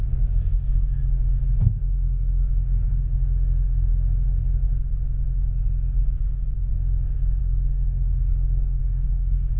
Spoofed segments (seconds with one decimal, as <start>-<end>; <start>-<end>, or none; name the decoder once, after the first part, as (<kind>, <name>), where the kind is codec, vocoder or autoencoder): 0.0-1.0 (codec, SNAC); 1.6-3.9; 6.7-9.6